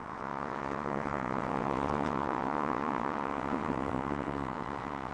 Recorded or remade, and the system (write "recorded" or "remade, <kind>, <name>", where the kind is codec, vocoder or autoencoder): remade, vocoder, WaveNeXt